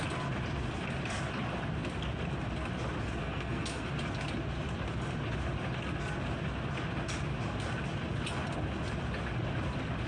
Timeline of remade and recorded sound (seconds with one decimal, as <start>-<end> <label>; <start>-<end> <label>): 0.0-3.2 recorded; 3.2-3.9 remade; 3.9-10.1 recorded